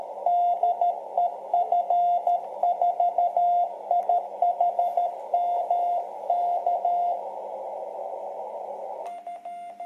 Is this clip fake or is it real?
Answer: real